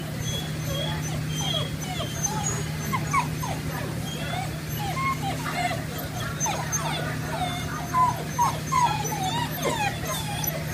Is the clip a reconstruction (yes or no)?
no